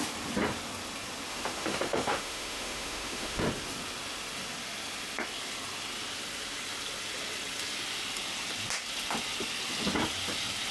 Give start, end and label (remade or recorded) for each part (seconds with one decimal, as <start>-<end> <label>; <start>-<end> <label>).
0.0-1.3 recorded; 1.3-3.4 remade; 3.4-10.7 recorded